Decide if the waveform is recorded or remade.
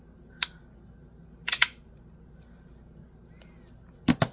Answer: recorded